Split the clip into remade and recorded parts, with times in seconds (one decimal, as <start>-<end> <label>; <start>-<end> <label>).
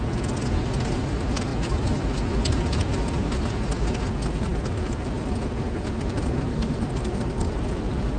0.0-6.5 recorded; 6.5-7.5 remade; 7.5-8.2 recorded